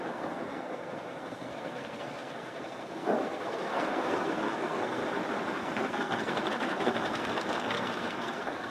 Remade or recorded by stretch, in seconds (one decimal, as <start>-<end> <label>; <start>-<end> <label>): 0.0-5.0 remade; 5.0-5.6 recorded; 5.6-8.7 remade